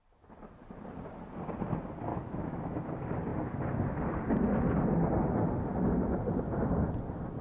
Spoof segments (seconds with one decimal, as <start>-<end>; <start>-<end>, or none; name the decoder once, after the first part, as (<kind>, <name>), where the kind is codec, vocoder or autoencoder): 2.1-2.9 (autoencoder, DAC-VAE)